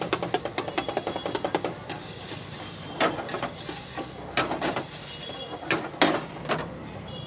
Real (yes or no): yes